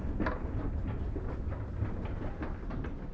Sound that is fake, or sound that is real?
real